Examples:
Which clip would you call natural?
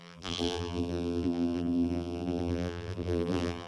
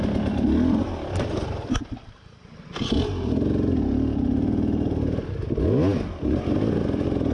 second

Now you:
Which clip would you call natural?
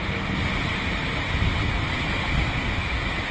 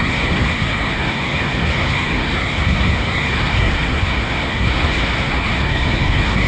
first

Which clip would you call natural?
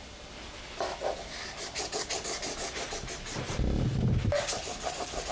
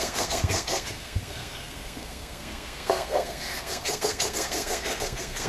first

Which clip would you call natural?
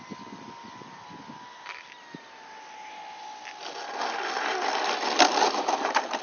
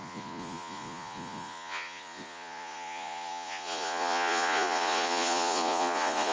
first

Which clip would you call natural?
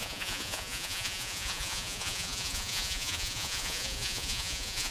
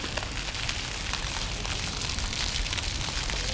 second